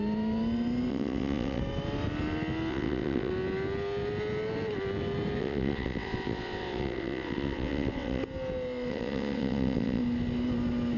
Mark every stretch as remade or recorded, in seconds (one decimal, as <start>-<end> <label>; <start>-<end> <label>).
0.0-0.9 recorded; 0.9-1.6 remade; 1.6-2.7 recorded; 2.7-3.3 remade; 3.3-5.4 recorded; 5.4-8.2 remade; 8.2-8.9 recorded; 8.9-10.0 remade; 10.0-11.0 recorded